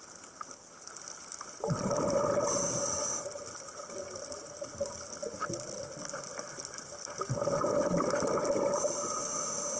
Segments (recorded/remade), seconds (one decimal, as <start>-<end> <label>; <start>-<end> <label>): 0.0-9.8 recorded